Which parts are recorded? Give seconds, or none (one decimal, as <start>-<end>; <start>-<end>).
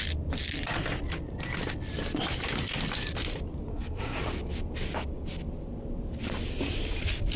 0.0-3.7; 4.2-7.4